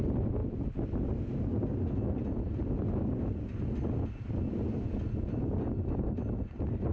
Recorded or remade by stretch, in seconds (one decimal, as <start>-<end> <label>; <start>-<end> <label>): 0.0-6.9 recorded